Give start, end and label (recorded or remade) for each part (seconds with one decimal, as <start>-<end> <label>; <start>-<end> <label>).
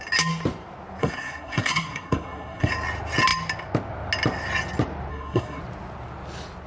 0.0-1.0 recorded; 1.0-2.7 remade; 2.7-5.1 recorded; 5.1-5.6 remade; 5.6-6.7 recorded